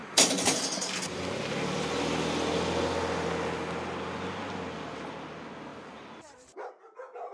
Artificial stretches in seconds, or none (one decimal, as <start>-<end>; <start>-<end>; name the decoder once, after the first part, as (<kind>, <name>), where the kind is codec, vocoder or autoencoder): 0.0-1.2 (vocoder, BigVGAN v2); 5.7-6.7